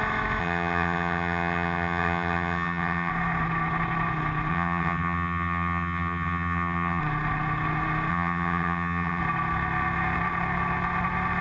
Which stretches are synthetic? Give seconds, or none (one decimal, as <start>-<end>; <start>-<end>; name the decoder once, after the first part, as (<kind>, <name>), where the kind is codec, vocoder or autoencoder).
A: 0.4-3.1 (vocoder, HiFi-GAN); 4.5-7.0; 8.1-9.2